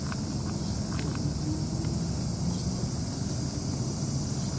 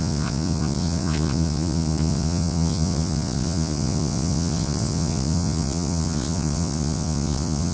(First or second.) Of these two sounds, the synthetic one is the second